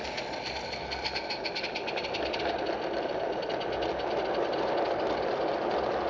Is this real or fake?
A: real